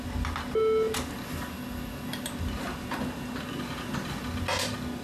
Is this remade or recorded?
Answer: recorded